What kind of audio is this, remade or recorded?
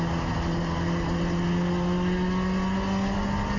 recorded